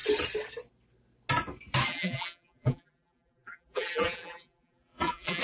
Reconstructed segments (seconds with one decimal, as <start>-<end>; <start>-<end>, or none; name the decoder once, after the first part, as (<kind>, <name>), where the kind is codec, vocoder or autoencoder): 1.9-5.4 (vocoder, BigVGAN v2)